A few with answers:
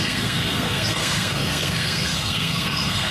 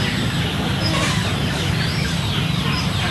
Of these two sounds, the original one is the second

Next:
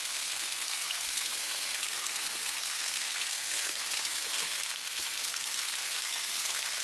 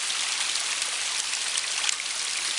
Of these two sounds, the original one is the second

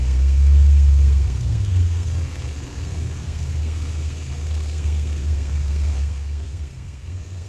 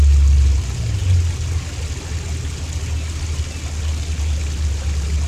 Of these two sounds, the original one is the second